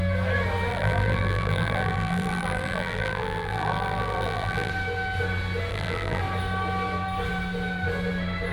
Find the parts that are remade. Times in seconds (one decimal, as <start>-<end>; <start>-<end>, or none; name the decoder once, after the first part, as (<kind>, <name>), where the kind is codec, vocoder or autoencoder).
0.7-4.7 (vocoder, BigVGAN v2); 5.7-6.2